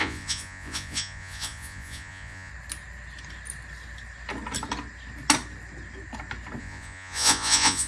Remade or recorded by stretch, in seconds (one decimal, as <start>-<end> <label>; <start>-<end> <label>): 0.0-2.5 remade; 2.5-6.6 recorded; 6.6-7.9 remade